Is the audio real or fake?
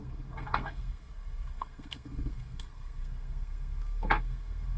fake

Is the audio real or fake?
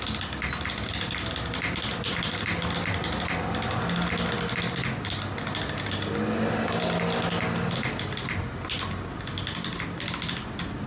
real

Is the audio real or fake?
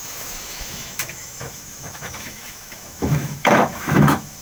fake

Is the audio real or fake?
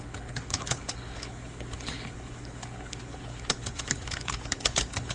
fake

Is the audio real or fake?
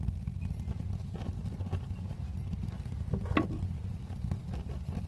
fake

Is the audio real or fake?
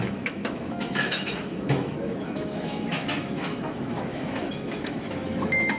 fake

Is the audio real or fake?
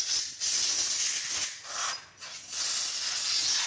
real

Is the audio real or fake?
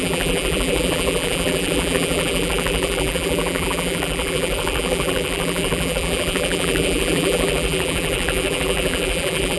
fake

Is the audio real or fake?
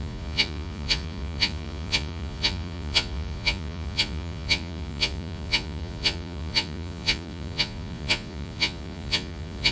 fake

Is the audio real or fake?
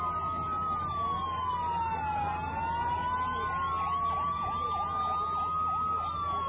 real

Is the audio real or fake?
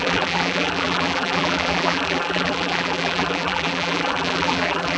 fake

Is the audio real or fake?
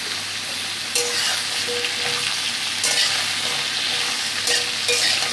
real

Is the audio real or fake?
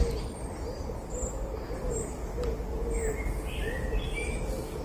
real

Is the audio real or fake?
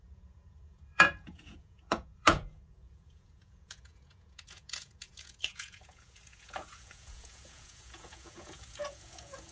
fake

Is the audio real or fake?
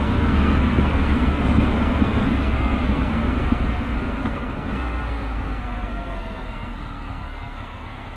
fake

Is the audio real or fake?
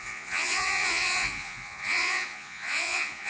fake